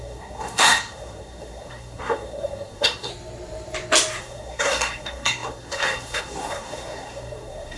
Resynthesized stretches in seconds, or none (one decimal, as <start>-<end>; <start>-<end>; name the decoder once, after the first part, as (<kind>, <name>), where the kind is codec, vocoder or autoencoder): 0.0-3.1 (codec, SNAC); 4.2-7.8